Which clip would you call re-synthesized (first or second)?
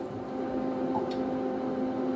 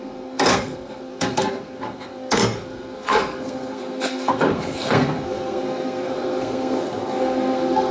second